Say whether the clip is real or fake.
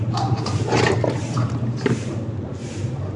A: fake